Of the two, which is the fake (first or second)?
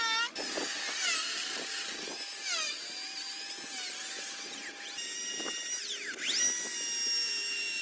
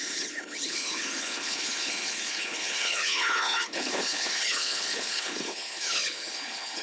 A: second